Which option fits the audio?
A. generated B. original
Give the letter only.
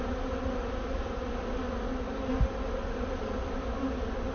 B